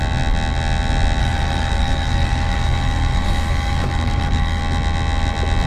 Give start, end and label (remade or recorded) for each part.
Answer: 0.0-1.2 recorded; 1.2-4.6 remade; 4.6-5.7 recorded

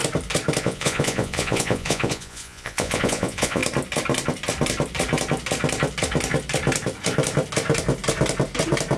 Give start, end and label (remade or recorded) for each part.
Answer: 0.0-0.6 recorded; 0.6-3.6 remade; 3.6-9.0 recorded

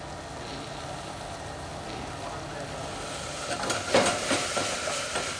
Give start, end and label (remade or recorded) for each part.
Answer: 0.0-5.4 recorded

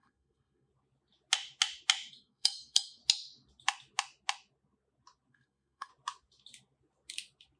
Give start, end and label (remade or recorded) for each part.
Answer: 0.0-0.7 remade; 0.7-2.1 recorded; 2.1-3.0 remade; 3.0-5.3 recorded; 5.3-5.9 remade; 5.9-7.6 recorded